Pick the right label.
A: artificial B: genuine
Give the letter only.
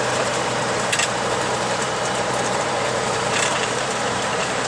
A